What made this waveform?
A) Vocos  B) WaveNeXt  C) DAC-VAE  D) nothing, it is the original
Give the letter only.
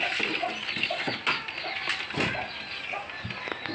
D